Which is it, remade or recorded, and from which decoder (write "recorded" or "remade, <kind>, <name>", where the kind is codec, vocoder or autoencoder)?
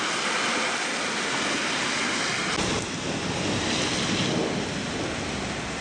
recorded